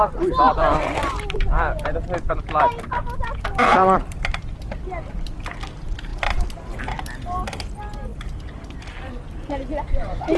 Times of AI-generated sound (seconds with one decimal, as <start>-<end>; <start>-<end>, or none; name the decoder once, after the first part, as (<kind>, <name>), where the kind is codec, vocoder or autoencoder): 3.7-4.5 (vocoder, BigVGAN v2); 6.1-6.8